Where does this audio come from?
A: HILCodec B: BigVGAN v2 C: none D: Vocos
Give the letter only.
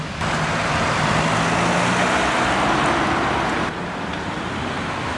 C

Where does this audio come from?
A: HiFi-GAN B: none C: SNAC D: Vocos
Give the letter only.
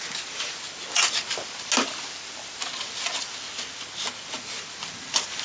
B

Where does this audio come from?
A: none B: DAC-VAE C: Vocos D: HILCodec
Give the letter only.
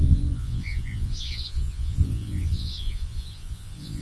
C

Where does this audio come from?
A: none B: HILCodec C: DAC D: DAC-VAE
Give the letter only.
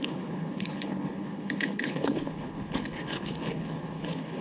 B